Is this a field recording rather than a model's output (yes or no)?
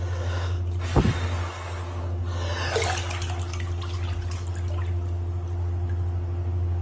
yes